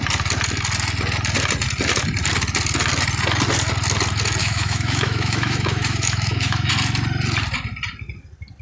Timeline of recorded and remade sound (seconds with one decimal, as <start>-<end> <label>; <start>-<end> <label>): 0.0-4.4 recorded; 4.4-6.7 remade; 6.7-8.6 recorded